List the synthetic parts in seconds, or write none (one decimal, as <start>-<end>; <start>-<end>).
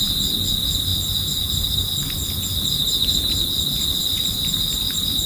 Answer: 0.0-0.9; 4.0-5.2